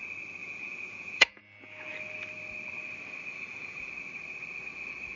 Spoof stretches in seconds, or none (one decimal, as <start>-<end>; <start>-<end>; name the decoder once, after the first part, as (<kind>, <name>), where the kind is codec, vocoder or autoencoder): 0.4-1.4 (vocoder, Vocos); 3.3-3.9